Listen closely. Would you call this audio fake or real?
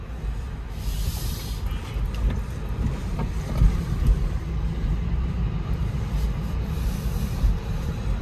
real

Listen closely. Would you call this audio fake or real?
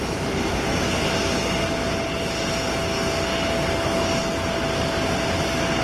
real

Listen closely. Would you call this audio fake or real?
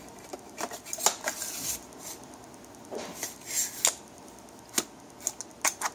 real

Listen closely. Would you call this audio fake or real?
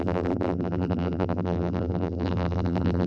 fake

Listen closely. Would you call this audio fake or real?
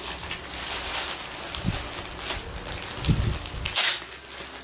real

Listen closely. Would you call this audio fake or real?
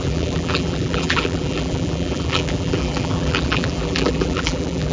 fake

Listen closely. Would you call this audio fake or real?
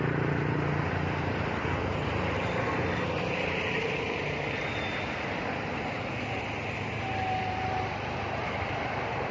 real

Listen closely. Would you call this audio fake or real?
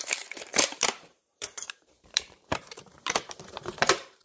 fake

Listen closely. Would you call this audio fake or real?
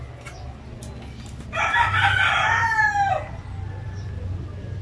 real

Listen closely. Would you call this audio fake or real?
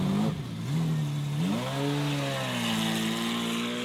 real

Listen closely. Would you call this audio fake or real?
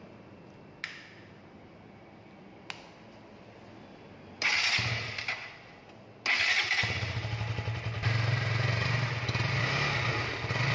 real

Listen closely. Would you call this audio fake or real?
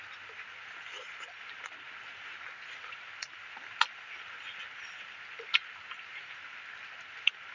real